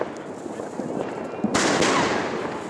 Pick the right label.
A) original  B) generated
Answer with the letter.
A